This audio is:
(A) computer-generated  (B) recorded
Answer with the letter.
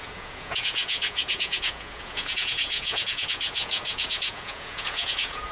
A